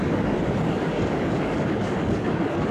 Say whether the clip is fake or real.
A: fake